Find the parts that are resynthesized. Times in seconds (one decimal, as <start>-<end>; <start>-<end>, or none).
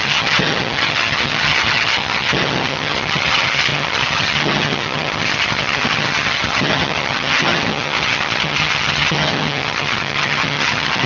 0.0-11.1